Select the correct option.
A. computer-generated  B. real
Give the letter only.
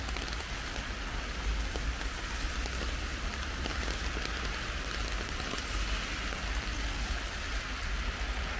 B